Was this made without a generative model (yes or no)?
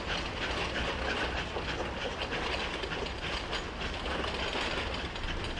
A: yes